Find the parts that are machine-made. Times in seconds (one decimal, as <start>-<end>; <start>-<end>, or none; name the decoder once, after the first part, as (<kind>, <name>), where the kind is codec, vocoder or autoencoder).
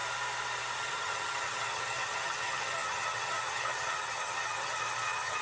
0.8-5.4 (vocoder, HiFi-GAN)